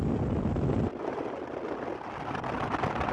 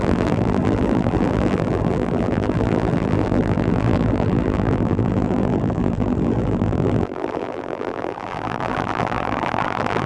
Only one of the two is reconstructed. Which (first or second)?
second